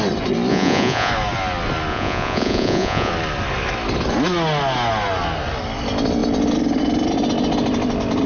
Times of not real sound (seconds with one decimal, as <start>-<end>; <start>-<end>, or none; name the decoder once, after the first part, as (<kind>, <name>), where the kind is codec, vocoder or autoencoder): 0.5-1.1 (vocoder, Vocos); 1.9-3.1